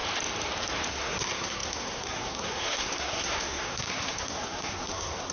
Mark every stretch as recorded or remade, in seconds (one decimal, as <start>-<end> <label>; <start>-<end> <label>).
0.0-0.9 recorded; 0.9-5.3 remade